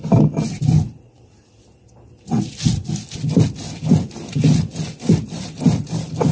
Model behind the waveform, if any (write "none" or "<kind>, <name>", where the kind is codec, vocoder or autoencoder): none